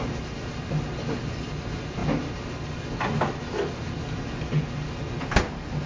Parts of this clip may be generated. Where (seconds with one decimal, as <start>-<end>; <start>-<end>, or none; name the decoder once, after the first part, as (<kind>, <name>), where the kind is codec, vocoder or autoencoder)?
none